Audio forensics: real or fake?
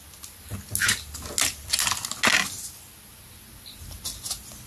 real